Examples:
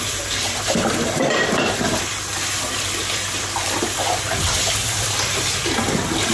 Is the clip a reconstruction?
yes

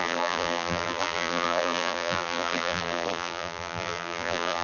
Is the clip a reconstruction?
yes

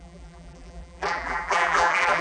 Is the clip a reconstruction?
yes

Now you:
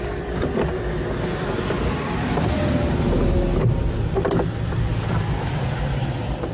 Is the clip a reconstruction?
no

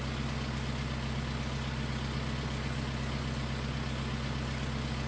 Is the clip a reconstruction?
no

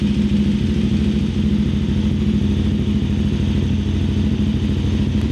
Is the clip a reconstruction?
no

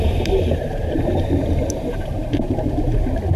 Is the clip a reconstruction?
yes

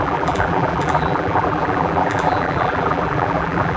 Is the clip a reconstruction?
yes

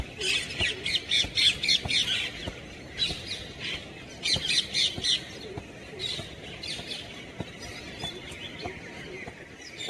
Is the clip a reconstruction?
no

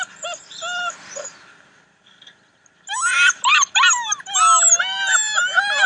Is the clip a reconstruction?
no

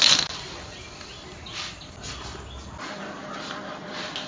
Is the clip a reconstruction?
no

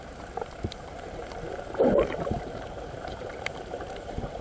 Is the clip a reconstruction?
yes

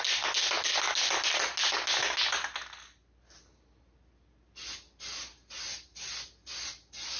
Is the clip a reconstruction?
no